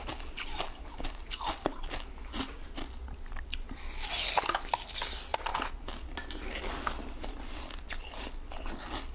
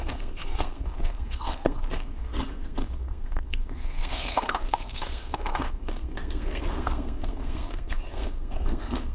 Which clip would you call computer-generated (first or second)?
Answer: second